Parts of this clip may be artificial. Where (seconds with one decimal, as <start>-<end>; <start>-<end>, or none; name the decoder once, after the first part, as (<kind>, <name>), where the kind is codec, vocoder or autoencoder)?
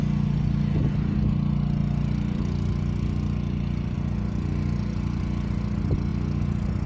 1.8-5.2 (vocoder, BigVGAN v2)